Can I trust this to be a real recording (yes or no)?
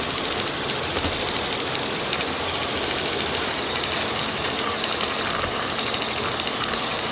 yes